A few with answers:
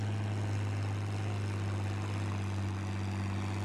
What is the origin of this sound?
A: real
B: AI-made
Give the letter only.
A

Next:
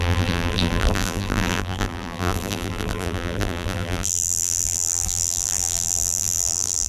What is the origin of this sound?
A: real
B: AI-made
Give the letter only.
B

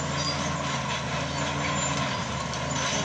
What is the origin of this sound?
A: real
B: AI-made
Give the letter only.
A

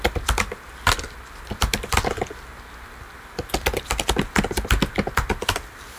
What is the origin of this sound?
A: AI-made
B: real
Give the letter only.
B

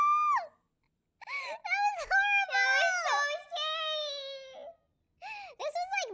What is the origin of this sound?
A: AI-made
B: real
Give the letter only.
B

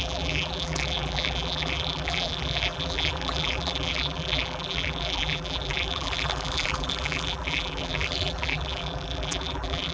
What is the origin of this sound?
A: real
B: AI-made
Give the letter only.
B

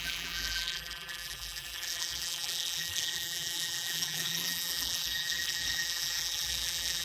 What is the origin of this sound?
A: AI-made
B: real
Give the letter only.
A